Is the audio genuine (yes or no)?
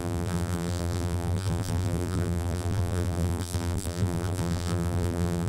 no